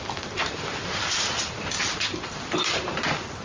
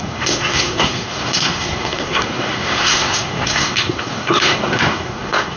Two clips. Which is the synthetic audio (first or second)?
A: second